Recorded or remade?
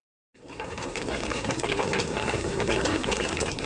remade